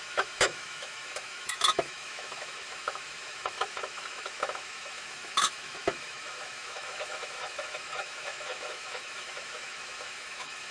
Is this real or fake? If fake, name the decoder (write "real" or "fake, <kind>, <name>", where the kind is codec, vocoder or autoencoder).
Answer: fake, autoencoder, DAC-VAE